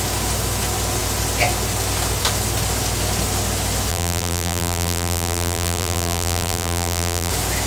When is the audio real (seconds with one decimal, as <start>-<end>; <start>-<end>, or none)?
0.0-3.9; 7.3-7.7